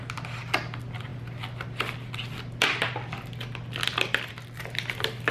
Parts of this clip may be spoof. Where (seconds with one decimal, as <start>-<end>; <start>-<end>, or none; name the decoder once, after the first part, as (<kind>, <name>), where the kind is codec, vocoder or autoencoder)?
none